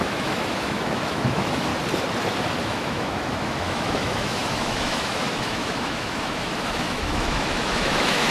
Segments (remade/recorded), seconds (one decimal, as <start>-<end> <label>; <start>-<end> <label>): 0.0-1.7 remade; 1.7-2.6 recorded; 2.6-8.3 remade